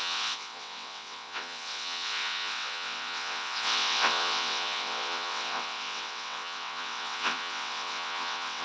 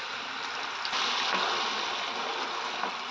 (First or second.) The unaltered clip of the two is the second